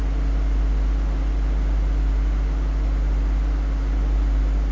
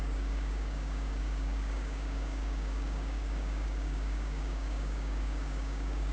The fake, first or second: second